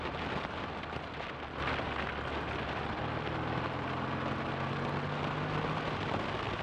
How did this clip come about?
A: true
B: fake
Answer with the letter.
A